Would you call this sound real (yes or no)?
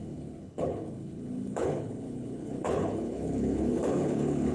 no